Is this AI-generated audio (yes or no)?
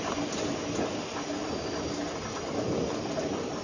no